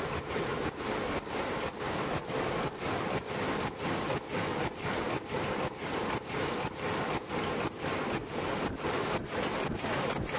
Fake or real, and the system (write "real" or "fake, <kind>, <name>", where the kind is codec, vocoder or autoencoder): real